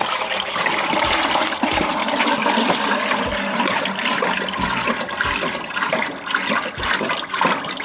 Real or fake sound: real